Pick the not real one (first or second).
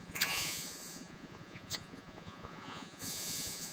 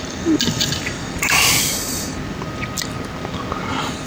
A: first